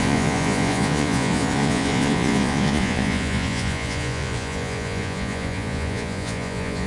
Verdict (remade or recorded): remade